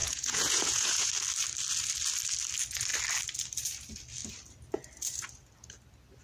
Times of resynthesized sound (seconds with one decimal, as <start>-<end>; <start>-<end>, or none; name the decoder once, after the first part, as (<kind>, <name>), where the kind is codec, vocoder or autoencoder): 0.0-1.1 (vocoder, Vocos)